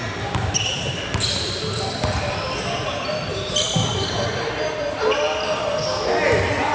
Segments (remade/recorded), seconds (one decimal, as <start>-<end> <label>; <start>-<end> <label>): 0.0-3.3 recorded; 3.3-4.2 remade; 4.2-6.7 recorded